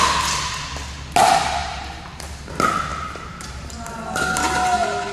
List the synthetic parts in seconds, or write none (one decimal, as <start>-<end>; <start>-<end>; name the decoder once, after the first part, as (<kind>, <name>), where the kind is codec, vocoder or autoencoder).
1.6-2.5 (vocoder, BigVGAN v2); 2.9-3.9

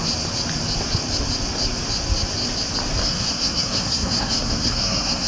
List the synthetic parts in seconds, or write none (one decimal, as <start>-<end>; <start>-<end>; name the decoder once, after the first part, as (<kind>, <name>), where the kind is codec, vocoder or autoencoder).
3.0-5.3 (codec, SNAC)

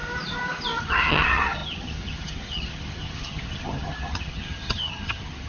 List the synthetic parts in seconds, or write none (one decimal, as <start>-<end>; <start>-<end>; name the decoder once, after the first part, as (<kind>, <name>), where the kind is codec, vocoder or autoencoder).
0.8-5.5 (vocoder, HiFi-GAN)